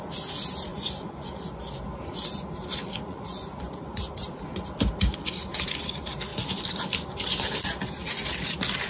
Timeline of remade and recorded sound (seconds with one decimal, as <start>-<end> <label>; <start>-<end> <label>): 0.0-0.7 recorded; 0.7-1.5 remade; 1.5-3.1 recorded; 3.1-3.7 remade; 3.7-8.9 recorded